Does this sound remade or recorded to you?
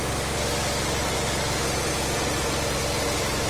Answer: recorded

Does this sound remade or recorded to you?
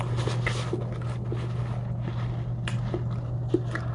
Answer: recorded